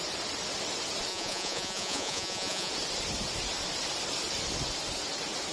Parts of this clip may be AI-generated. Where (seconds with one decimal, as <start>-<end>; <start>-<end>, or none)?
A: 1.1-2.7